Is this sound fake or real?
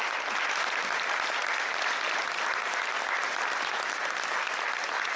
real